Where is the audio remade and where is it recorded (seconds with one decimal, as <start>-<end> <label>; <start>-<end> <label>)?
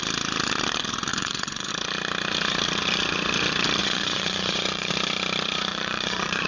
0.0-1.1 recorded; 1.1-1.7 remade; 1.7-3.8 recorded; 3.8-4.9 remade; 4.9-5.7 recorded; 5.7-6.5 remade